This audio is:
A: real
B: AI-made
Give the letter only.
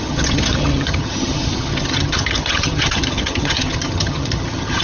B